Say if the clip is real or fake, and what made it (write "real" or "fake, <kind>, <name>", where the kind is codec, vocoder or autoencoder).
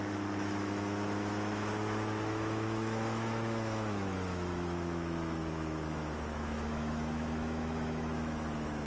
fake, autoencoder, DAC-VAE